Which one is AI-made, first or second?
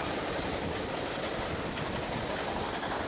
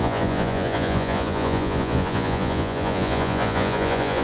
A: second